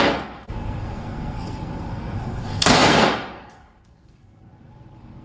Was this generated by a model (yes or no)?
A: yes